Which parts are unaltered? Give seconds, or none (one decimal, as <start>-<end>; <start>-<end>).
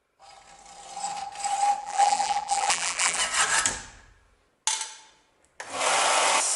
0.0-1.8; 3.2-6.6